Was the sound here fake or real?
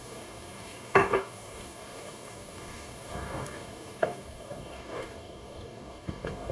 fake